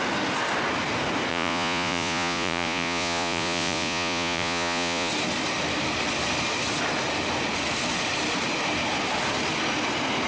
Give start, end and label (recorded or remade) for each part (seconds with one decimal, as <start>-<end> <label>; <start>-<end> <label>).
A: 0.0-1.3 recorded; 1.3-5.1 remade; 5.1-10.3 recorded